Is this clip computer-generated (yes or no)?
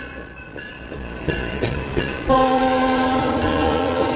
yes